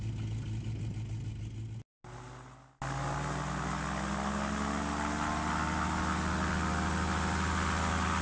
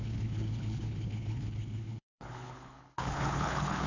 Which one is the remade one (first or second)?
second